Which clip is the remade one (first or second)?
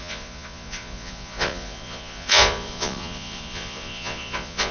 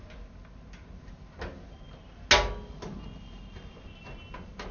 first